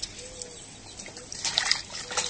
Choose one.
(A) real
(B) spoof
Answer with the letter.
A